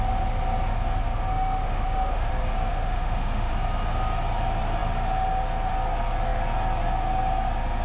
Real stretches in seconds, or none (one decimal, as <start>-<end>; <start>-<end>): 0.0-1.3; 2.3-2.7; 3.5-7.8